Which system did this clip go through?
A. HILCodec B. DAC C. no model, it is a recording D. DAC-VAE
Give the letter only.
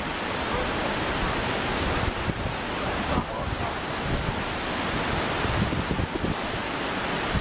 C